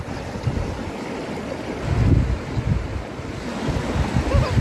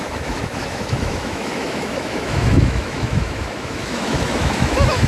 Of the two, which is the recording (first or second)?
first